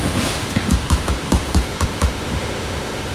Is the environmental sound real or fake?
fake